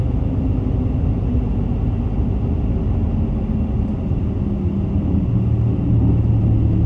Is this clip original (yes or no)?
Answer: yes